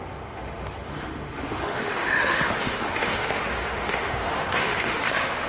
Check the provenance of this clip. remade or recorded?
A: remade